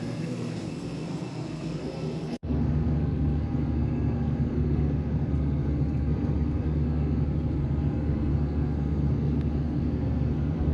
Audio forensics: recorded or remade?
remade